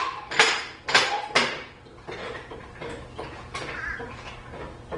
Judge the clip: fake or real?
real